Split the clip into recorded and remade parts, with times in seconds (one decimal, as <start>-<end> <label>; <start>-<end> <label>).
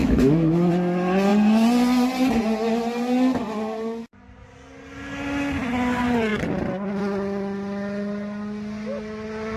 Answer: 0.0-0.7 remade; 0.7-9.6 recorded